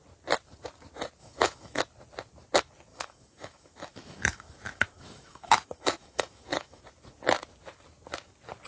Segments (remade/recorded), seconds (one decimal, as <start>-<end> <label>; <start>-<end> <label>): 0.0-1.2 recorded; 1.2-1.8 remade; 1.8-2.9 recorded; 2.9-6.8 remade; 6.8-8.7 recorded